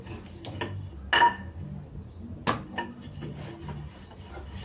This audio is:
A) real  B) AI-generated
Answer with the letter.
A